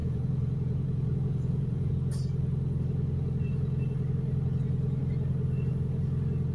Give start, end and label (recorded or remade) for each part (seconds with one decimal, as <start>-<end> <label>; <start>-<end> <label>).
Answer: 0.0-1.9 remade; 1.9-6.5 recorded